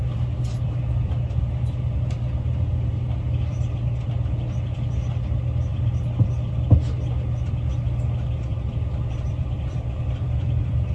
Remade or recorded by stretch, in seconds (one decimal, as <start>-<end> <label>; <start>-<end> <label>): 0.0-8.5 recorded; 8.5-10.9 remade